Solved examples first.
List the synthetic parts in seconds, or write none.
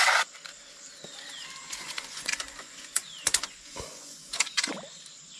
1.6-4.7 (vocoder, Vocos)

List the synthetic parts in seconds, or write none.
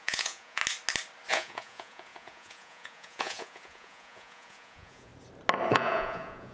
0.0-0.6 (vocoder, Vocos); 1.3-5.1; 5.7-6.5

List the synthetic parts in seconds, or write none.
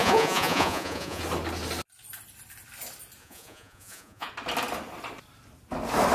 0.0-1.2 (vocoder, Vocos); 3.2-4.3